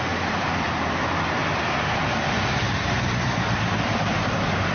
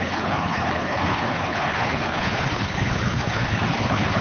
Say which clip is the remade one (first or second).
second